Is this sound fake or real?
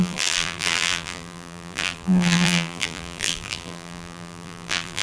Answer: fake